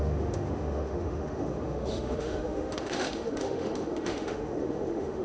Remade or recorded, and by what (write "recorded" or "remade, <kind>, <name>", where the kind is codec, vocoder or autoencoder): remade, autoencoder, DAC-VAE